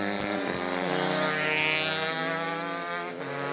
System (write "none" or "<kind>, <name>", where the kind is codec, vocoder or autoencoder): none